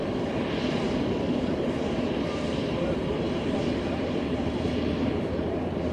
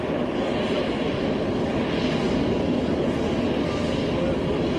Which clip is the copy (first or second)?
first